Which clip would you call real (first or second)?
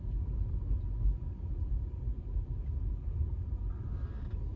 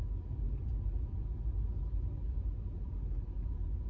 second